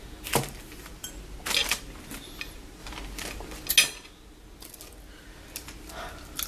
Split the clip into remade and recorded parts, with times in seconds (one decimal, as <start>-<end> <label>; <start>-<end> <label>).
0.0-6.5 recorded